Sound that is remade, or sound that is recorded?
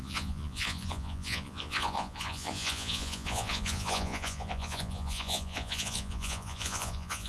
remade